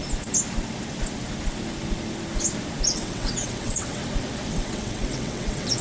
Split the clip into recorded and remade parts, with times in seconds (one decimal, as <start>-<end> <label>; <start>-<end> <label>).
0.0-2.9 recorded; 2.9-4.0 remade; 4.0-4.5 recorded; 4.5-5.8 remade